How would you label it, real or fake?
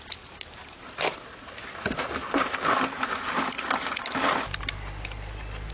real